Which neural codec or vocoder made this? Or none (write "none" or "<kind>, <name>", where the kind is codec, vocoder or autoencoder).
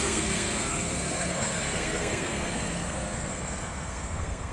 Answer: codec, SNAC